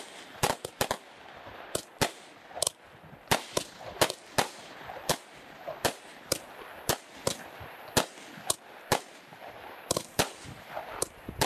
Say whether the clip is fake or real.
real